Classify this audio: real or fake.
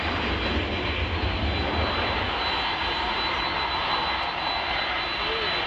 real